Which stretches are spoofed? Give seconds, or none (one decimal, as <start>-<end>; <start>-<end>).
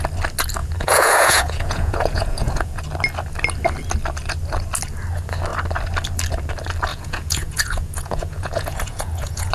0.6-2.8; 6.9-9.5